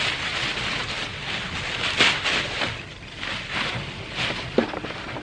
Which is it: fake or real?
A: real